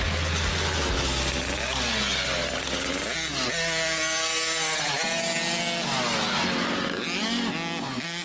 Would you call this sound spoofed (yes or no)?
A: no